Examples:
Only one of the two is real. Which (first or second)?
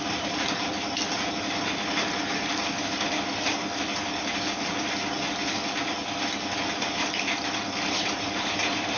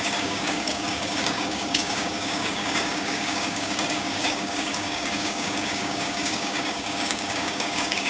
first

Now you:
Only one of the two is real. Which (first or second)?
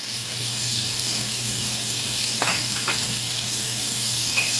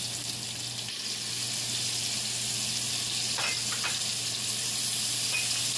second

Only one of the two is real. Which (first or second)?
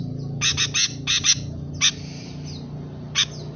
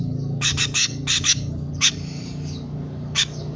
first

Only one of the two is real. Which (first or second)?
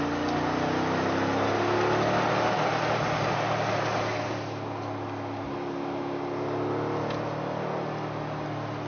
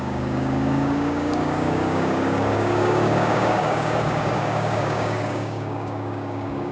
first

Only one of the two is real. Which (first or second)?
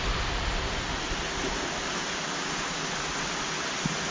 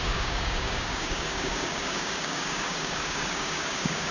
first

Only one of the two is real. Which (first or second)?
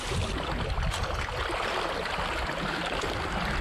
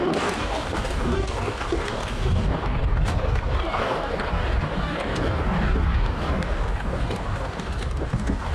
first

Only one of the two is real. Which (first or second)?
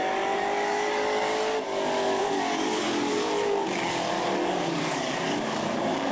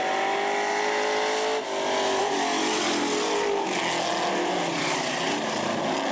second